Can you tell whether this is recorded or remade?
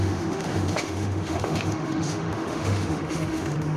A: remade